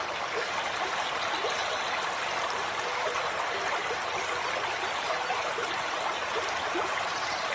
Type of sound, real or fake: real